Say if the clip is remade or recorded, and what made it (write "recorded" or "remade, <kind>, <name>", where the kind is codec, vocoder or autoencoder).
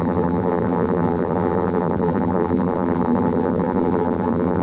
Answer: remade, vocoder, BigVGAN v2